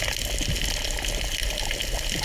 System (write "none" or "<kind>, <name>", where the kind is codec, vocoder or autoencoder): none